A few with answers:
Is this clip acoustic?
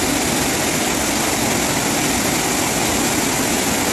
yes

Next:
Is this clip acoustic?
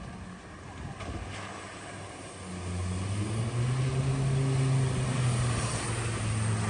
yes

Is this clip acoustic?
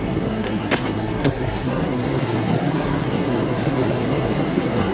no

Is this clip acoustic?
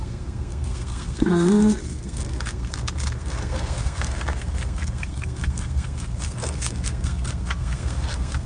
no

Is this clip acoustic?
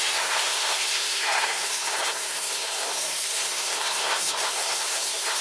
no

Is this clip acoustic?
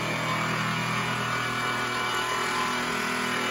yes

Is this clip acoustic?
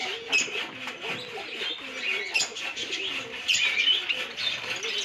yes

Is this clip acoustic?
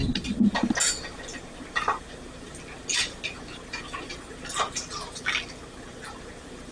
yes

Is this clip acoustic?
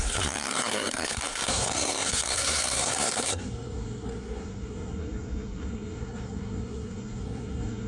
no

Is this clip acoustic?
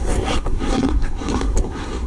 no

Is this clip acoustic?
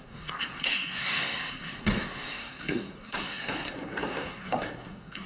no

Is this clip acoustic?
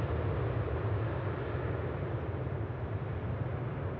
yes